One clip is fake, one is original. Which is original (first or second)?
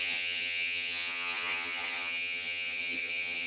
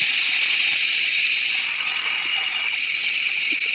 second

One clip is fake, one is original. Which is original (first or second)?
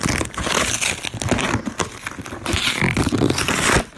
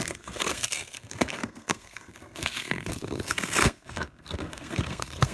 first